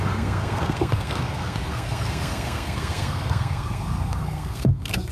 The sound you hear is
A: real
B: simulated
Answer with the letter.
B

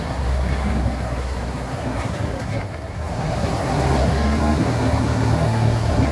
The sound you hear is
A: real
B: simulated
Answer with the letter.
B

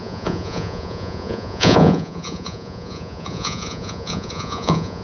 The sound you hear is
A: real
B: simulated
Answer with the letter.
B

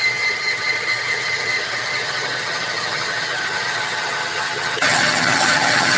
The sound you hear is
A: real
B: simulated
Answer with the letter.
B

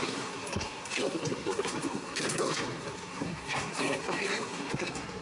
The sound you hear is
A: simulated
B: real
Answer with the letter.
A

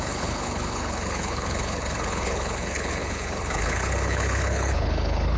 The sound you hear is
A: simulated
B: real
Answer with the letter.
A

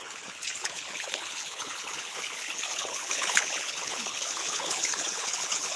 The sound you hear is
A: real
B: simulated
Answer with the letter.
B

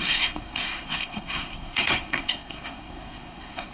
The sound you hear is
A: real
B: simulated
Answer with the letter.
B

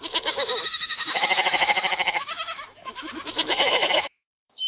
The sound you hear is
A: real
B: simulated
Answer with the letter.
B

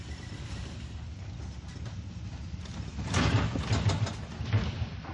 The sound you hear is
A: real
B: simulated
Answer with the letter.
A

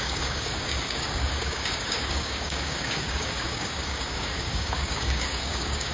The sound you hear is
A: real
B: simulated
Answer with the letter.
B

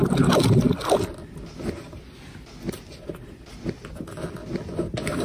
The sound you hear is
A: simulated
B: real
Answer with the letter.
B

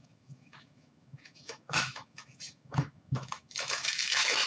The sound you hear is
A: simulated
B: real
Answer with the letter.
A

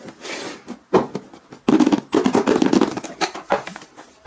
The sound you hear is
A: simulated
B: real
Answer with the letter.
B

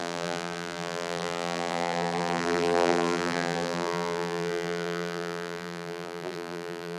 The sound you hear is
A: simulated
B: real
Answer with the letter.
A